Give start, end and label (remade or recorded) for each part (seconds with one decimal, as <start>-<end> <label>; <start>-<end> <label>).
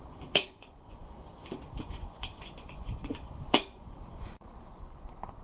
0.0-5.4 remade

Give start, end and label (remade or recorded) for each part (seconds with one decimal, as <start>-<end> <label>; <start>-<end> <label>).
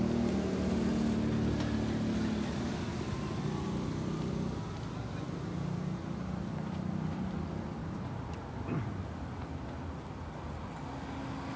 0.0-7.8 recorded; 7.8-8.5 remade; 8.5-11.6 recorded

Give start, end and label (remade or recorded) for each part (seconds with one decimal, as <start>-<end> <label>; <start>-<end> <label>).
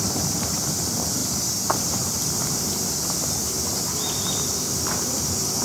0.0-5.6 remade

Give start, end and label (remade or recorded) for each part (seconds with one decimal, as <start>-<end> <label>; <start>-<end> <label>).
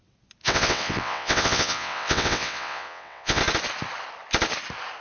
0.0-0.4 recorded; 0.4-3.4 remade; 3.4-5.0 recorded